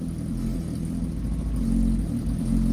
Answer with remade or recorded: recorded